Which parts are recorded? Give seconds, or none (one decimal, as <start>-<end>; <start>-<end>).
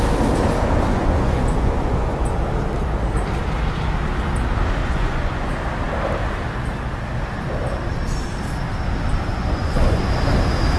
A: 0.0-0.9; 2.3-4.8; 5.5-9.3; 10.0-10.8